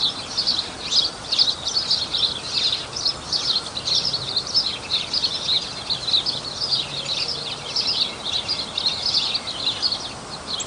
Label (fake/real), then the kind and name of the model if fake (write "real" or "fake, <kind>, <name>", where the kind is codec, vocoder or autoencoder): real